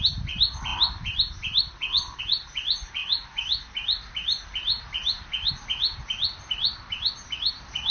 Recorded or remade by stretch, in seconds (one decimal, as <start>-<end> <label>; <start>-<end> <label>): 0.0-7.9 recorded